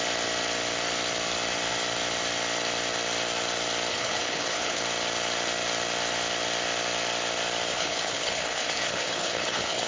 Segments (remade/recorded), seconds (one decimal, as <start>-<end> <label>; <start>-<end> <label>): 0.0-3.9 recorded; 3.9-4.8 remade; 4.8-7.7 recorded; 7.7-9.9 remade